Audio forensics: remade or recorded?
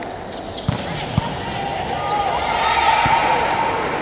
recorded